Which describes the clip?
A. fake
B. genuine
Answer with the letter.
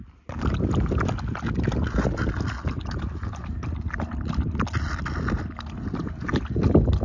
B